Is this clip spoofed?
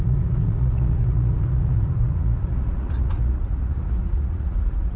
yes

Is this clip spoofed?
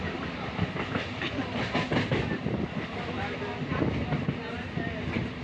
no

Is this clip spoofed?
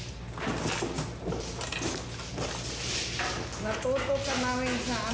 no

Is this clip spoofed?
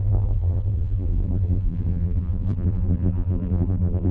yes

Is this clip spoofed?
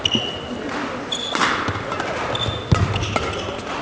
no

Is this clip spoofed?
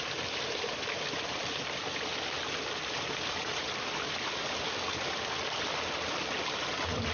no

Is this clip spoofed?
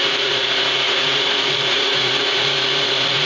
yes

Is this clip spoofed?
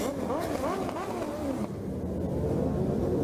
no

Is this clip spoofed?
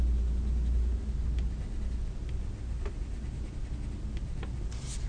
no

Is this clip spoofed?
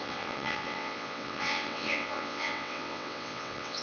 yes